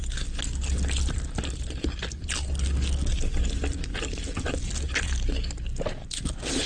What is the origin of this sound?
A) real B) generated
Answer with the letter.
A